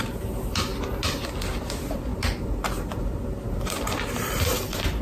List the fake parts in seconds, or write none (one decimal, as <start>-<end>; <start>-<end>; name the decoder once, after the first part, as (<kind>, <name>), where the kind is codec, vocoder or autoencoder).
0.0-0.7 (vocoder, BigVGAN v2); 1.6-2.1